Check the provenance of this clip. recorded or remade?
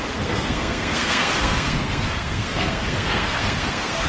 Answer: remade